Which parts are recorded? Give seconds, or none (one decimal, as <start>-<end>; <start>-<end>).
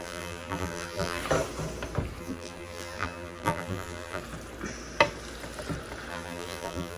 1.2-2.2; 4.2-6.1